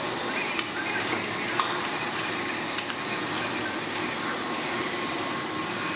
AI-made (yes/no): no